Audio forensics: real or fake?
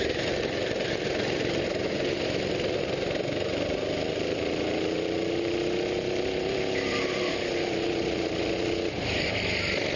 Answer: real